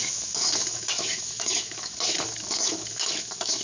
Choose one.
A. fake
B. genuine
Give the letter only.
A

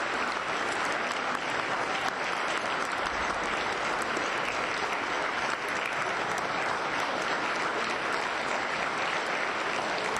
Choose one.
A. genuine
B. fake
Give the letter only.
A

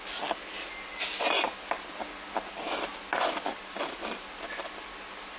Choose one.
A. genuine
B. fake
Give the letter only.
A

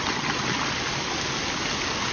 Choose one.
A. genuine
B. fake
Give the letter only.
A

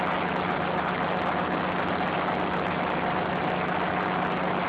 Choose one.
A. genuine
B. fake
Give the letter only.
A